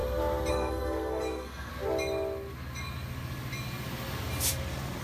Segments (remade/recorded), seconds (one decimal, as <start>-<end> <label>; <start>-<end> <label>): 0.0-0.5 recorded; 0.5-1.7 remade; 1.7-5.0 recorded